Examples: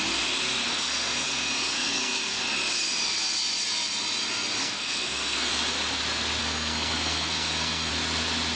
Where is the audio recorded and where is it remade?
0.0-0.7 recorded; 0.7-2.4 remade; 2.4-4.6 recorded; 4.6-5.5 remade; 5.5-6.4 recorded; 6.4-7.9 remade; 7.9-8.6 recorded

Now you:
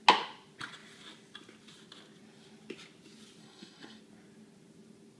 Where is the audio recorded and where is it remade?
0.0-3.4 recorded; 3.4-4.0 remade; 4.0-5.2 recorded

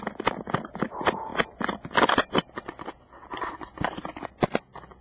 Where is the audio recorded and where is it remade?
0.0-5.0 recorded